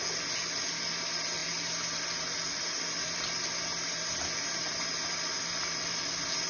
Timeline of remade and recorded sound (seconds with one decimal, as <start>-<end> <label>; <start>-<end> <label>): 0.0-6.5 recorded